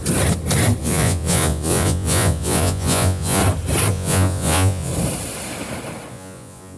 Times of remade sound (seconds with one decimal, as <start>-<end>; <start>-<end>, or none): 0.8-3.4; 3.9-4.9; 6.1-6.8